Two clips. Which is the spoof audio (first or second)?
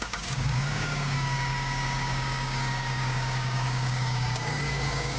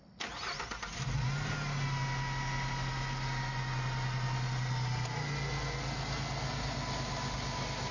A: first